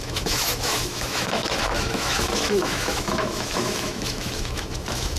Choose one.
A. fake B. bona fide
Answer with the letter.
A